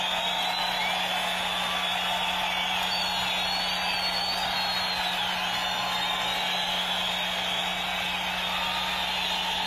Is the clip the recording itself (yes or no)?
yes